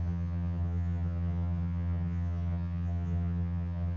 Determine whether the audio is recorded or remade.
remade